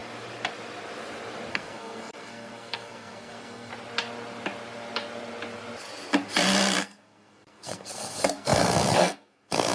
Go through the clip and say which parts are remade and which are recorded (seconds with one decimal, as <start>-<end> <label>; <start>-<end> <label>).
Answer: 0.0-1.5 recorded; 1.5-3.7 remade; 3.7-6.8 recorded; 6.8-9.7 remade